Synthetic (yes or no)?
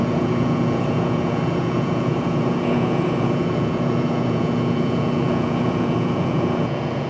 yes